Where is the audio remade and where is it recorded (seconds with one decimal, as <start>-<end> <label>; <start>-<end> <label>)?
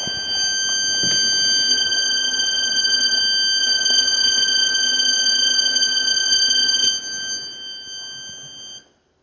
0.0-1.7 recorded; 1.7-3.2 remade; 3.2-3.6 recorded; 3.6-6.9 remade; 6.9-9.2 recorded